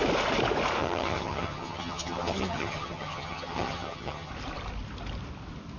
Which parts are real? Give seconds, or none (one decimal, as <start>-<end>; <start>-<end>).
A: 0.0-0.8; 4.3-5.8